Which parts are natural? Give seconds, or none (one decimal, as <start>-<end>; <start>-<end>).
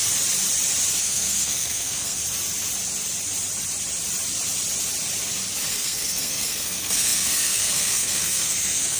0.0-1.0; 2.2-5.7